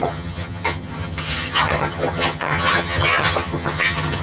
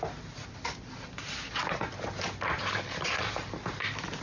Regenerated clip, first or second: first